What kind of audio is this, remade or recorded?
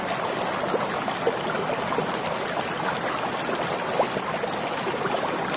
recorded